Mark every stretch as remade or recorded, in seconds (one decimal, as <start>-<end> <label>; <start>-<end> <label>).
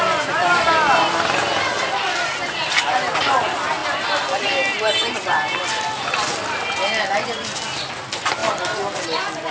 0.0-9.5 recorded